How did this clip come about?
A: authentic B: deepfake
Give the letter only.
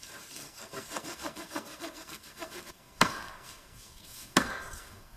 B